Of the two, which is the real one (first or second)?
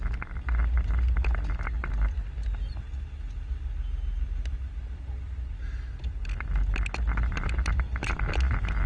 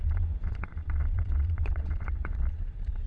first